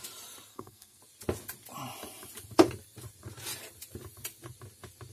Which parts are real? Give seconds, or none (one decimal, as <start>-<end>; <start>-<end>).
0.0-0.5; 1.0-5.1